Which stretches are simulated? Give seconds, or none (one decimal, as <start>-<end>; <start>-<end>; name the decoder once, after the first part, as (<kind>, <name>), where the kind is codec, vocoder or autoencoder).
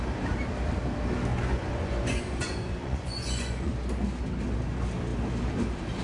1.3-3.7 (vocoder, Vocos)